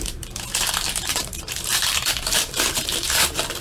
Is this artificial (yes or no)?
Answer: yes